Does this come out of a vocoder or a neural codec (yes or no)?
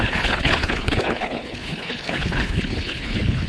yes